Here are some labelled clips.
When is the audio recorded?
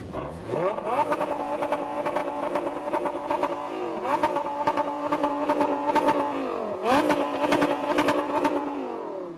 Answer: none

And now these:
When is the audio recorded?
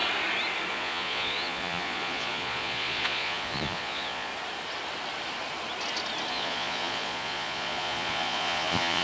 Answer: 0.0-0.7; 4.3-6.3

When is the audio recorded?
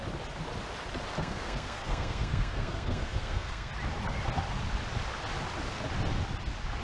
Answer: 0.0-1.2; 3.7-6.8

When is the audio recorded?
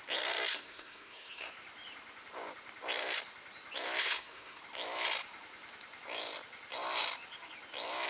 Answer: 0.0-0.5; 1.5-4.0; 4.6-8.1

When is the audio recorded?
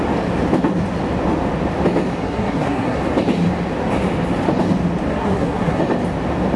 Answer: 0.0-2.2; 3.0-5.1; 5.8-6.6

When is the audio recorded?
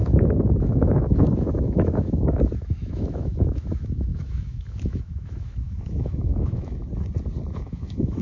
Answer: 6.8-7.5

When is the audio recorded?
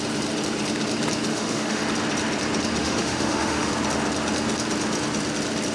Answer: 0.0-1.3; 1.8-2.8; 3.7-5.7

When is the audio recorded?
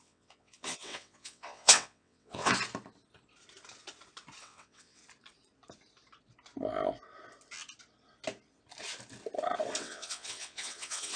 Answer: 2.5-4.4; 5.0-9.8